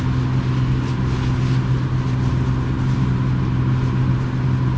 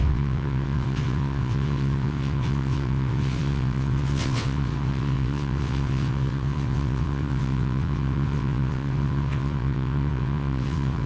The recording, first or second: first